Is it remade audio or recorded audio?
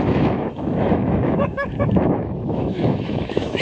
remade